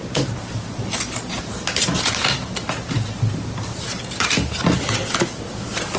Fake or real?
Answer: real